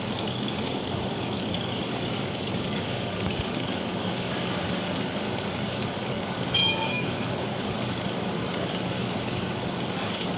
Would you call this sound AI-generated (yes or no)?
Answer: yes